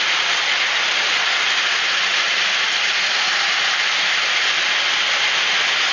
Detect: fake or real real